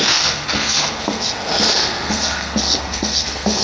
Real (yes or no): no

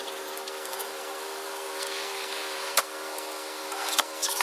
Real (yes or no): no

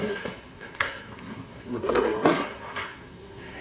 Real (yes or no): no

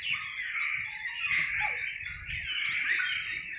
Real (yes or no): yes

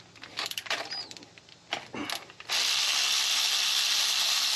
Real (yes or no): yes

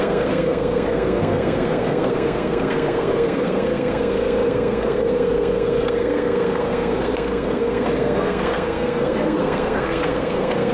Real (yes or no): no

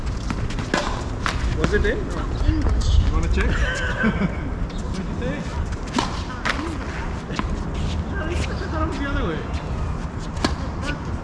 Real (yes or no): yes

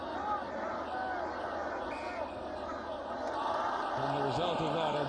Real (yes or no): yes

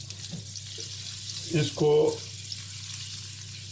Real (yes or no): yes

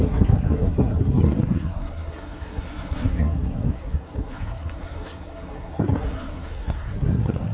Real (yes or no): no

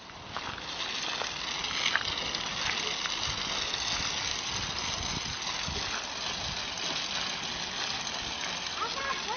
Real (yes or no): yes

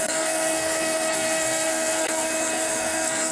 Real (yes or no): no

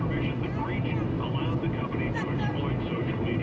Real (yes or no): yes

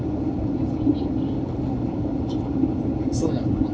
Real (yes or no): yes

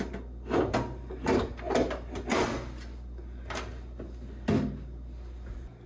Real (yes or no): yes